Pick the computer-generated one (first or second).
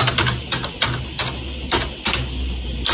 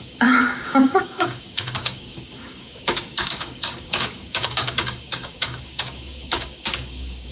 second